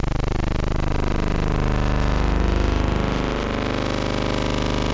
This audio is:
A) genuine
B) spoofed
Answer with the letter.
A